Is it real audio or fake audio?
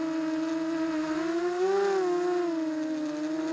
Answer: real